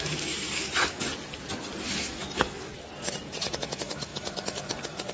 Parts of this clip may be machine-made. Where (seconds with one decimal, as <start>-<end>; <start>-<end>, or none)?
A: 0.0-1.1; 1.8-2.7; 3.4-5.1